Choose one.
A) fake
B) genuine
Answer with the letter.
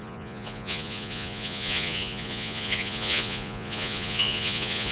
A